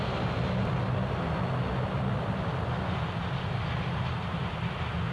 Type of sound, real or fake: real